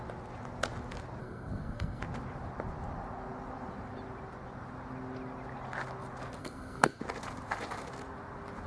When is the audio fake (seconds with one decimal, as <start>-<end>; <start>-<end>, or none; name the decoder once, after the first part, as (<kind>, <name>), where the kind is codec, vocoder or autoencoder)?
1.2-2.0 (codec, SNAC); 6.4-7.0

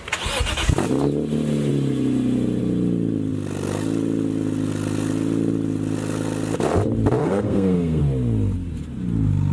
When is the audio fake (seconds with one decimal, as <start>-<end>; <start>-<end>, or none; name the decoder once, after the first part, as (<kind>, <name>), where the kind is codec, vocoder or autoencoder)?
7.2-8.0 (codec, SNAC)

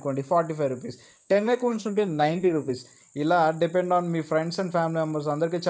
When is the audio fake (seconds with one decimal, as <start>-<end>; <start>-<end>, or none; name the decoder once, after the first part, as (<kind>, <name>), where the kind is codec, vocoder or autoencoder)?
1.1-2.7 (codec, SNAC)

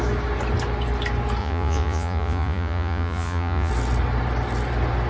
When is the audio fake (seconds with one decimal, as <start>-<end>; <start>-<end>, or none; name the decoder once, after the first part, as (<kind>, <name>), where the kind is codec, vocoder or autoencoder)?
1.4-3.7 (vocoder, Vocos)

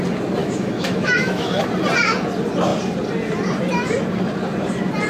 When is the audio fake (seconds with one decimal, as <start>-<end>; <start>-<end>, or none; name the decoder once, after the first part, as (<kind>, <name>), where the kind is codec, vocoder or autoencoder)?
0.4-1.6 (autoencoder, DAC-VAE)